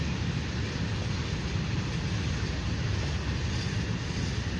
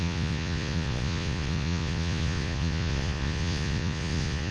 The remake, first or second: second